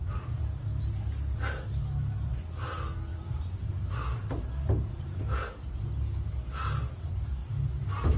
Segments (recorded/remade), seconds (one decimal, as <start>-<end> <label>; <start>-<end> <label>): 0.0-3.1 recorded; 3.1-5.7 remade; 5.7-8.2 recorded